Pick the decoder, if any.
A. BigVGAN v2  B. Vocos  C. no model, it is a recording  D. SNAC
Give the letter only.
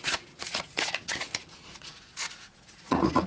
B